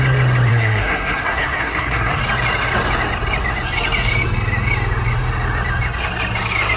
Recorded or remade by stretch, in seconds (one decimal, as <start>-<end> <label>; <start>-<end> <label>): 0.0-0.5 recorded; 0.5-2.2 remade; 2.2-6.8 recorded

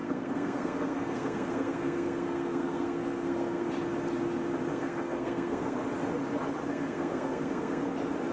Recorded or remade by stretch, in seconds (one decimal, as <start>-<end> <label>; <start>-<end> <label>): 0.0-3.7 remade; 3.7-4.7 recorded; 4.7-5.8 remade; 5.8-6.7 recorded; 6.7-7.9 remade; 7.9-8.3 recorded

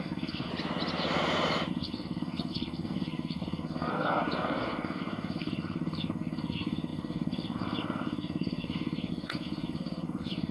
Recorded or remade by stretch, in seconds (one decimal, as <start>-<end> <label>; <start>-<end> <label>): 0.0-0.5 remade; 0.5-1.7 recorded; 1.7-10.5 remade

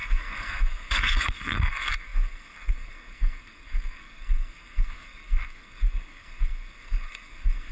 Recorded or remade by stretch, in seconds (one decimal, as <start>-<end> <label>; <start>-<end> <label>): 0.0-7.7 remade

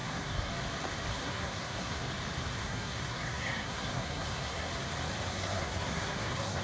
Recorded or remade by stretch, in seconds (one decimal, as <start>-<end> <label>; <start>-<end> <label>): 0.0-0.5 remade; 0.5-1.1 recorded; 1.1-2.0 remade; 2.0-2.6 recorded; 2.6-4.7 remade; 4.7-5.3 recorded; 5.3-6.6 remade

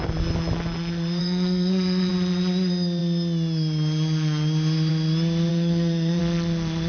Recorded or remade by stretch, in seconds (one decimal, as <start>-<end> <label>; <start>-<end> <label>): 0.0-1.2 recorded; 1.2-2.1 remade; 2.1-5.5 recorded; 5.5-6.2 remade; 6.2-6.9 recorded

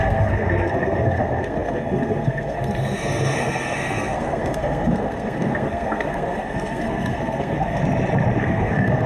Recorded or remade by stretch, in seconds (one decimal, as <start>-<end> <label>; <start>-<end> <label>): 0.0-7.8 remade; 7.8-8.4 recorded; 8.4-9.1 remade